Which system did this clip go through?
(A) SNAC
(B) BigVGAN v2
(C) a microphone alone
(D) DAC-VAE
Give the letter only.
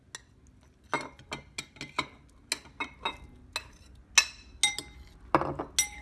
C